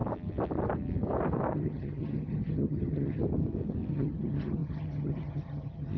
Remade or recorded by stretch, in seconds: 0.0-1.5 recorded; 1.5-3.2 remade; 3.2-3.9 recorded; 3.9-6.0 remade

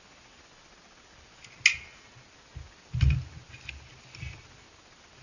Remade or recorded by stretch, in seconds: 0.0-5.2 recorded

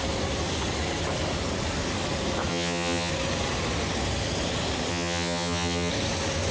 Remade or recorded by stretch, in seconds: 0.0-2.5 recorded; 2.5-3.1 remade; 3.1-4.9 recorded; 4.9-5.9 remade; 5.9-6.5 recorded

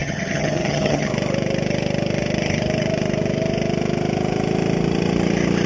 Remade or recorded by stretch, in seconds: 0.0-1.1 remade; 1.1-5.7 recorded

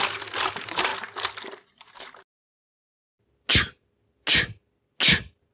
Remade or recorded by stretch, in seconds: 0.0-5.5 recorded

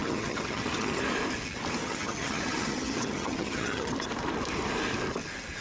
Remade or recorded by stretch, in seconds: 0.0-1.0 remade; 1.0-1.8 recorded; 1.8-3.9 remade; 3.9-5.6 recorded